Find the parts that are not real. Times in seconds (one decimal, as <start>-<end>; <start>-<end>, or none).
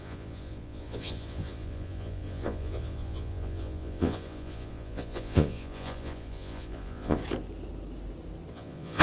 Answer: 0.0-7.2; 8.5-9.0